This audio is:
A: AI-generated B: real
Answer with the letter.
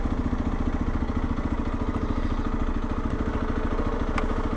B